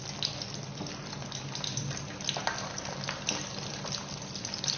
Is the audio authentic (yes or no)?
yes